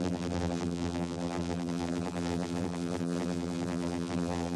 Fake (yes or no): yes